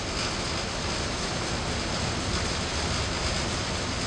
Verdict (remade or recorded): recorded